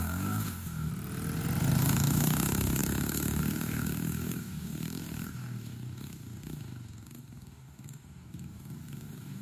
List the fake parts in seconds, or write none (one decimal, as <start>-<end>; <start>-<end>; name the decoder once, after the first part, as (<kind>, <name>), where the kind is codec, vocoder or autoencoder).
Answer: 0.0-0.9 (codec, DAC); 1.8-9.4